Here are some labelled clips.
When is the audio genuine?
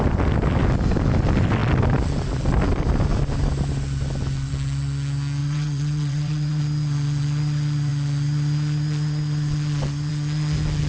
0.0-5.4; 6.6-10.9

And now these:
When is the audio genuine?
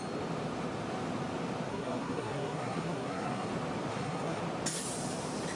0.0-1.7; 3.5-3.9; 4.4-5.6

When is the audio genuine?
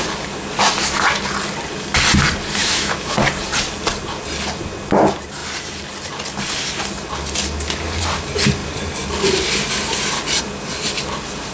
0.0-2.6; 3.2-11.5